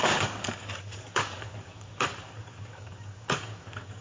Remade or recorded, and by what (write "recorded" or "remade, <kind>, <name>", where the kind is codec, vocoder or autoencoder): remade, codec, DAC